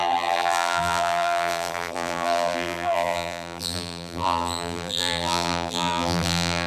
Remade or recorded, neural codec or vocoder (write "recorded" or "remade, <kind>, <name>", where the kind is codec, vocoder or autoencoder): remade, vocoder, BigVGAN v2